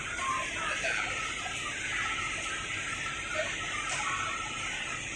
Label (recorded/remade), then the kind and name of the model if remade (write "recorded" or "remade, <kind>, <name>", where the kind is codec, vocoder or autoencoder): recorded